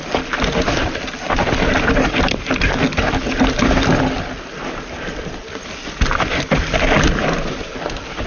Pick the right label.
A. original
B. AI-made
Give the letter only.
A